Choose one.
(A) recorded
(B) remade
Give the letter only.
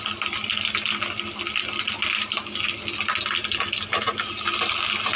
A